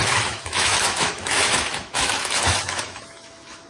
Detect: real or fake fake